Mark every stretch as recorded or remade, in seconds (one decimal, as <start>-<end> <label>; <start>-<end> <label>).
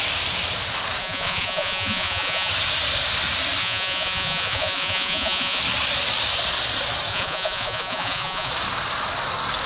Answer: 0.0-1.0 recorded; 1.0-2.5 remade; 2.5-3.6 recorded; 3.6-5.6 remade; 5.6-7.1 recorded; 7.1-8.5 remade; 8.5-9.7 recorded